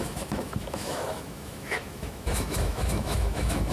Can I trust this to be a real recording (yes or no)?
no